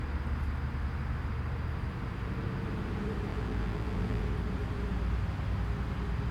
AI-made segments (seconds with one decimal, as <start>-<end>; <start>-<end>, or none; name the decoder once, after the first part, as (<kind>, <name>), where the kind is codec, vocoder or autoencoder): 3.3-4.2 (vocoder, BigVGAN v2)

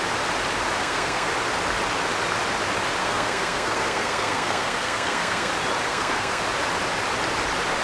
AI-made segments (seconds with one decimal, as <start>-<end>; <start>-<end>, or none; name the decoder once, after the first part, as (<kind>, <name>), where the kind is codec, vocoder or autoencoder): 0.8-1.3 (codec, SNAC); 3.0-5.5; 5.9-6.4

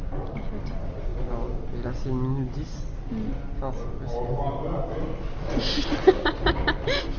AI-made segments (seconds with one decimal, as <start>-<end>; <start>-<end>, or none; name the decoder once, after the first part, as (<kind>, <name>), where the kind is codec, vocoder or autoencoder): none

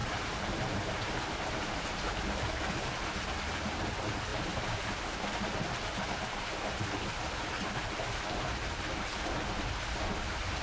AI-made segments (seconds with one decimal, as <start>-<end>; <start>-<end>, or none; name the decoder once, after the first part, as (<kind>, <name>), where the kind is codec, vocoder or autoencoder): 0.0-2.2 (vocoder, BigVGAN v2); 4.3-5.0

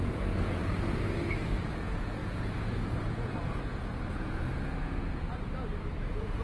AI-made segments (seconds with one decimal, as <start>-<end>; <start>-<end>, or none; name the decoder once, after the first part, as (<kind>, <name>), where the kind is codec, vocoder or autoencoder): 0.0-0.6 (vocoder, Vocos); 1.6-5.3; 5.9-6.4

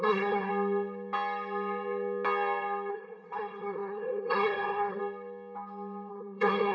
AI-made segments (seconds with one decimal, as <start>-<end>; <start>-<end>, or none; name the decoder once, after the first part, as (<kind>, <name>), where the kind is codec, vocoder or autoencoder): 0.0-0.5 (codec, SNAC); 2.9-5.0; 6.1-6.7

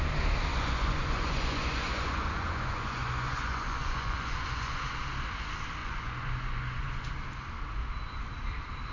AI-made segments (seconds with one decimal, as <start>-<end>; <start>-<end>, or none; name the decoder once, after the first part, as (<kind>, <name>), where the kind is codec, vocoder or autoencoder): 0.5-5.0 (vocoder, Vocos); 5.8-7.1

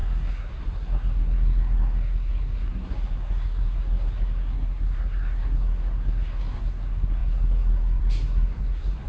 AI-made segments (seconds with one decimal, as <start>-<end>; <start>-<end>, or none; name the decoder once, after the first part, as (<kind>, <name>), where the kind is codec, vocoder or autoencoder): 0.0-9.1 (codec, SNAC)